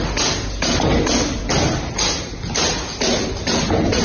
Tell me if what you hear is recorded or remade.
recorded